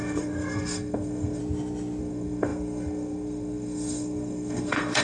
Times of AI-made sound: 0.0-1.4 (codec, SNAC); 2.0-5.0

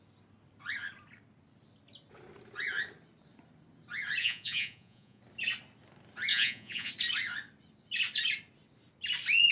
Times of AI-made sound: 4.2-5.2 (vocoder, Vocos); 6.3-6.9

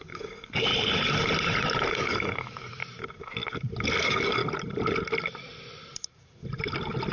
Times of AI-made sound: 0.0-0.7 (codec, DAC); 1.9-2.8; 4.0-4.4